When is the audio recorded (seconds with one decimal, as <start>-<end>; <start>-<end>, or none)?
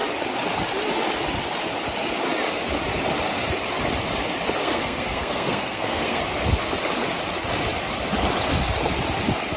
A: 0.0-4.6; 6.2-9.6